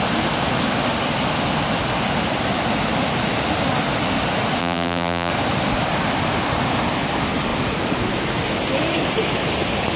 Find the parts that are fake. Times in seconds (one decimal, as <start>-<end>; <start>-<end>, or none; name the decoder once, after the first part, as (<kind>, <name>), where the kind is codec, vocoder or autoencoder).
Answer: 4.6-5.3 (vocoder, BigVGAN v2)